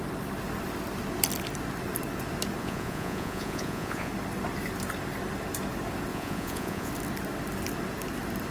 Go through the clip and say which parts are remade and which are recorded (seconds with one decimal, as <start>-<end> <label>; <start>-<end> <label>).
0.0-2.6 recorded; 2.6-4.1 remade; 4.1-6.1 recorded; 6.1-6.9 remade; 6.9-8.5 recorded